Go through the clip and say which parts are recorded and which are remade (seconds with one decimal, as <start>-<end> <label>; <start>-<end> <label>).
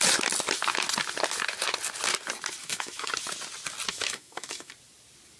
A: 0.0-2.6 recorded; 2.6-3.1 remade; 3.1-3.9 recorded; 3.9-4.7 remade; 4.7-5.4 recorded